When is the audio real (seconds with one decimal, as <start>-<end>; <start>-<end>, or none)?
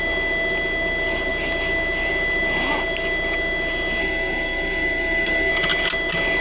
0.0-4.0; 5.5-6.4